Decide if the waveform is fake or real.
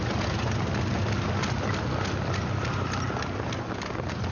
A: real